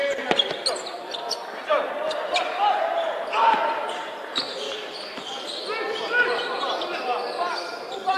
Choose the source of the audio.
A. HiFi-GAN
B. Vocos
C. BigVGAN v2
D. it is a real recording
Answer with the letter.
D